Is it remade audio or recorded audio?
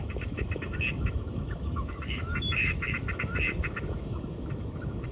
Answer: remade